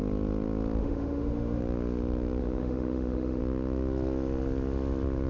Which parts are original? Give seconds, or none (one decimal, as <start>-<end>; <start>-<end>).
0.0-0.8; 1.6-2.4; 3.4-5.3

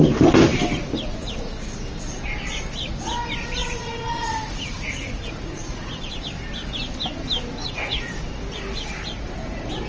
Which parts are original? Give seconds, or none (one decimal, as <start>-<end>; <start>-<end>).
0.0-3.6; 6.1-7.6; 8.1-9.9